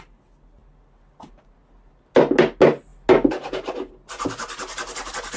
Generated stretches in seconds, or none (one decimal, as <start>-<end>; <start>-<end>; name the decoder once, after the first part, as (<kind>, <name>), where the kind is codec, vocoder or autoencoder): none